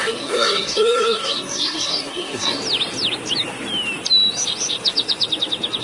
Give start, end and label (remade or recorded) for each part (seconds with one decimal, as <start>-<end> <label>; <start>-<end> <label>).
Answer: 0.0-2.6 remade; 2.6-5.8 recorded